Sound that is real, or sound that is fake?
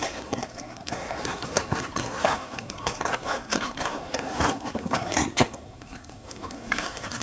fake